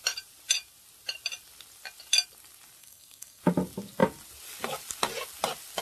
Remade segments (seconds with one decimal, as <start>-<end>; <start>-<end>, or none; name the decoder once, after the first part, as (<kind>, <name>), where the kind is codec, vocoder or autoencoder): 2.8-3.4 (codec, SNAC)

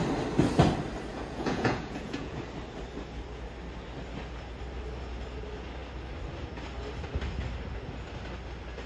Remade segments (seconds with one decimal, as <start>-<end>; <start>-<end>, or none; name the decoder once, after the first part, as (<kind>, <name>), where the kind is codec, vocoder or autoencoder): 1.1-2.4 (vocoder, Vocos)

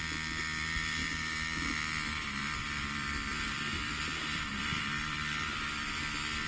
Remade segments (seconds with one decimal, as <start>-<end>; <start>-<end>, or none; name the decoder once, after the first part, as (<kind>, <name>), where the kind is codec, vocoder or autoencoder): 2.4-6.0 (vocoder, BigVGAN v2)